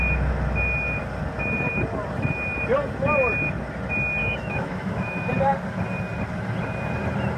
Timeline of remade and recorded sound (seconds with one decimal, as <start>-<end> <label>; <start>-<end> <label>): 0.0-4.2 recorded; 4.2-5.3 remade; 5.3-7.4 recorded